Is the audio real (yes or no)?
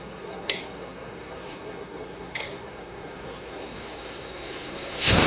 no